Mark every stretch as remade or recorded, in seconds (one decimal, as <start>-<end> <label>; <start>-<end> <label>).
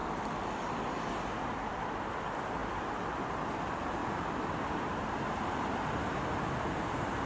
0.0-4.0 recorded; 4.0-6.2 remade; 6.2-7.3 recorded